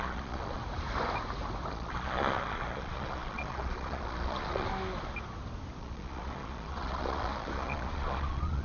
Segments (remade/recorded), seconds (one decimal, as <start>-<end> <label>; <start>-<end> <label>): 0.0-0.6 remade; 0.6-1.7 recorded; 1.7-4.7 remade; 4.7-5.8 recorded; 5.8-8.6 remade